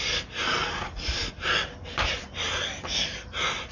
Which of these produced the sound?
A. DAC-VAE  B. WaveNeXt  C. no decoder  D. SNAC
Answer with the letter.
C